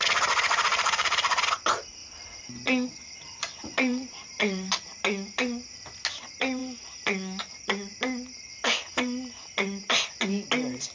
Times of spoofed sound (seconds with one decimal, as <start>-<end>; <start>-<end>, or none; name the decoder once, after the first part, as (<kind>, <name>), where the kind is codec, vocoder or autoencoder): 0.7-1.4 (vocoder, BigVGAN v2); 2.0-2.5; 3.6-4.7